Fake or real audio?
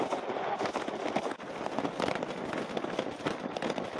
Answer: real